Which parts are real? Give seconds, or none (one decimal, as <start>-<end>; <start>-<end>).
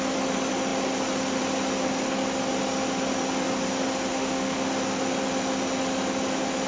0.0-4.1; 4.7-6.7